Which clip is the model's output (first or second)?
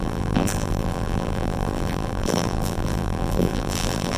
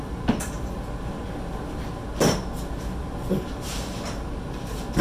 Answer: first